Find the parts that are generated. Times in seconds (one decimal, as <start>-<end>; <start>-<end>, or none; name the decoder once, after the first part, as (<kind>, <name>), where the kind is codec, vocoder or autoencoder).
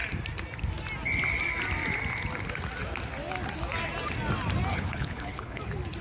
4.7-5.6 (codec, HILCodec)